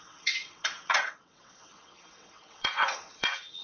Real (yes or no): no